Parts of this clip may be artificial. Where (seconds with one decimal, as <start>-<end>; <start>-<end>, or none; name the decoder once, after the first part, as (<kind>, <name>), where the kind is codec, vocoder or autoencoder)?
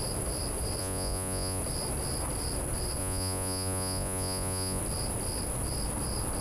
0.8-1.6 (vocoder, Vocos); 3.0-4.8